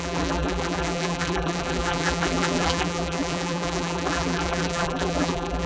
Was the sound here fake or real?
fake